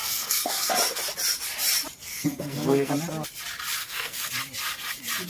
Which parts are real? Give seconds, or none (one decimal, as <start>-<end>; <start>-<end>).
0.7-2.0; 2.9-3.8; 4.3-5.3